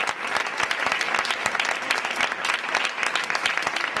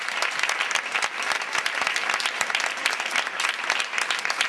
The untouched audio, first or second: first